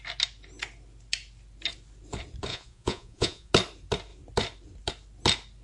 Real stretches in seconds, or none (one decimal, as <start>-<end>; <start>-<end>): 0.0-2.5; 3.5-5.6

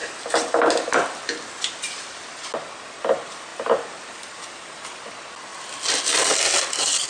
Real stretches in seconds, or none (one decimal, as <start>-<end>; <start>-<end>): 0.0-3.5; 4.5-7.1

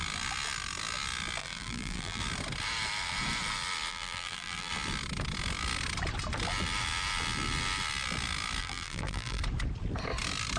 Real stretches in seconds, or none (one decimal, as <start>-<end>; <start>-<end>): 0.0-1.4; 2.2-3.9; 4.7-8.6; 9.4-10.6

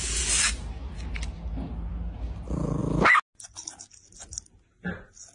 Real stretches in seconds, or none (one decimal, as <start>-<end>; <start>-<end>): 0.0-5.3

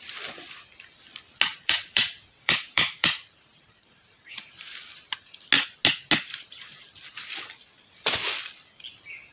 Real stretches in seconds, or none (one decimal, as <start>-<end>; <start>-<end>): 0.0-1.5; 4.5-9.3